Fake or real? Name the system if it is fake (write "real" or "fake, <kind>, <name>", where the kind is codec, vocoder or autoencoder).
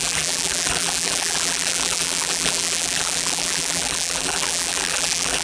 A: fake, vocoder, BigVGAN v2